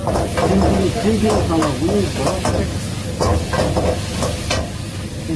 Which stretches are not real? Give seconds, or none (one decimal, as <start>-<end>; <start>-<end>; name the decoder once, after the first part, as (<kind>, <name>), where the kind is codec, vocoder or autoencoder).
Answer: none